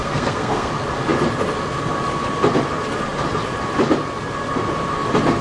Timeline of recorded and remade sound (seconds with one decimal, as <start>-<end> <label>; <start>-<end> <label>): 0.0-0.7 remade; 0.7-5.4 recorded

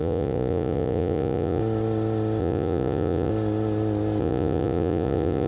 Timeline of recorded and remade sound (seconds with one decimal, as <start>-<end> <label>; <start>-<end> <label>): 0.0-1.6 remade; 1.6-2.4 recorded; 2.4-3.3 remade; 3.3-4.2 recorded; 4.2-5.5 remade

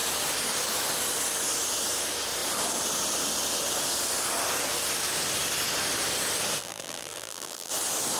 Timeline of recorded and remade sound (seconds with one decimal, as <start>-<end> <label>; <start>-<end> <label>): 0.0-6.6 recorded; 6.6-7.7 remade; 7.7-8.2 recorded